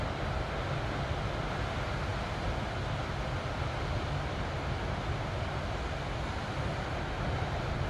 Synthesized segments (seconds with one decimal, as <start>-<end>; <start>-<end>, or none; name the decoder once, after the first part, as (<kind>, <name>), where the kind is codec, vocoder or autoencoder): none